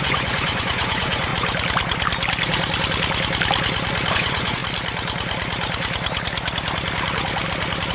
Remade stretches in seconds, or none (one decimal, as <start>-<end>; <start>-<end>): 0.0-1.3; 4.1-4.6